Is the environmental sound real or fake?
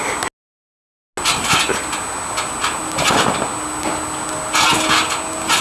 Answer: real